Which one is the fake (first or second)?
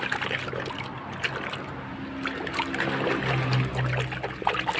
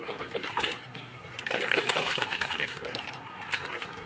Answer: second